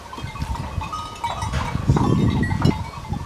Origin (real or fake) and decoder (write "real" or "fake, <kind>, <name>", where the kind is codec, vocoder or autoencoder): real